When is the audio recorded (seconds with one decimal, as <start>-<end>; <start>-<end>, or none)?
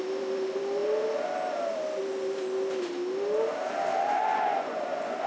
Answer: 0.0-3.9